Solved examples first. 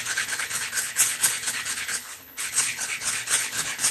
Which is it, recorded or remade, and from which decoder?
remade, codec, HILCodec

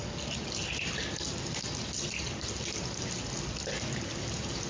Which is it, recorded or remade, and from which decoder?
recorded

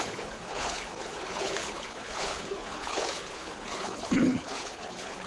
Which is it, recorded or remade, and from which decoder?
remade, codec, HILCodec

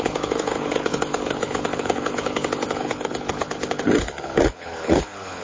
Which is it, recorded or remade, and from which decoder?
remade, codec, HILCodec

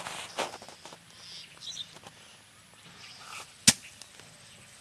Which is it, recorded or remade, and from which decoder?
recorded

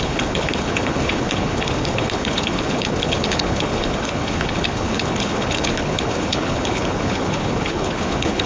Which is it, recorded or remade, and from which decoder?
remade, codec, HILCodec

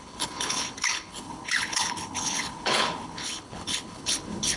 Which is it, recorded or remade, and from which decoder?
remade, codec, HILCodec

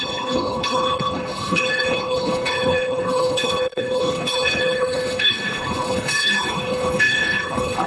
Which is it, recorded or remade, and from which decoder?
remade, codec, HILCodec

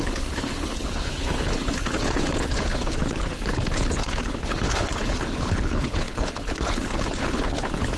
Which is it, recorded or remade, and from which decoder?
remade, codec, HILCodec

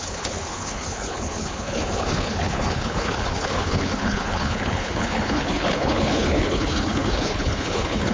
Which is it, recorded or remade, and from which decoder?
remade, codec, HILCodec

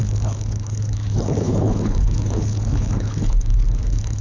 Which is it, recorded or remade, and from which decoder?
remade, codec, HILCodec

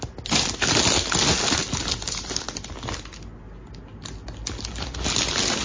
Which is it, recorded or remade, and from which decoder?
recorded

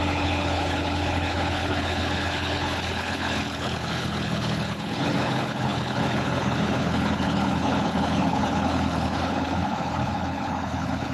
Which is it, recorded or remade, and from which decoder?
remade, codec, HILCodec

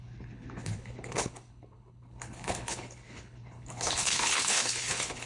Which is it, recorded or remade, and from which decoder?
remade, codec, HILCodec